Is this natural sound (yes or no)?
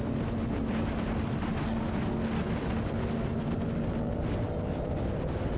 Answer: yes